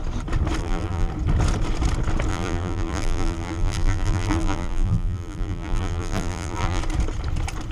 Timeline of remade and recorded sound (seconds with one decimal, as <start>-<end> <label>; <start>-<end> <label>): 0.0-0.6 recorded; 0.6-1.1 remade; 1.1-2.3 recorded; 2.3-6.8 remade; 6.8-7.7 recorded